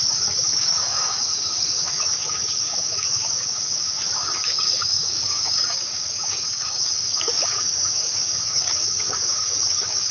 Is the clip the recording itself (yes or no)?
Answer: no